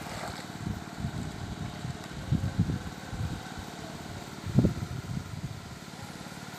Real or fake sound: real